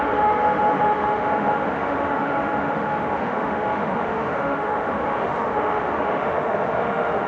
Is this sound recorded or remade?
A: remade